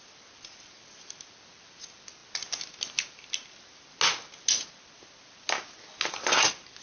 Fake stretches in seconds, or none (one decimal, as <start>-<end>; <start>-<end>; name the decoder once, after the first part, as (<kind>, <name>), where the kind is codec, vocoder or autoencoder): none